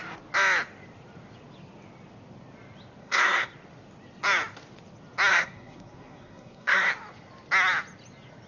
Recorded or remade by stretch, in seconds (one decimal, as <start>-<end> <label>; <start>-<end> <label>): 0.0-3.0 recorded; 3.0-3.5 remade; 3.5-5.3 recorded; 5.3-6.9 remade; 6.9-8.5 recorded